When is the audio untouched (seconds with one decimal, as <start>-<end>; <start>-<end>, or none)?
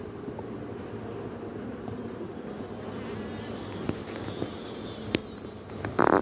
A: 0.0-6.2